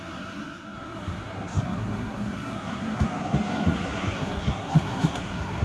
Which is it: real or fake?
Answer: fake